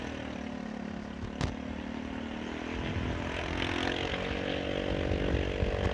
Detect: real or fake real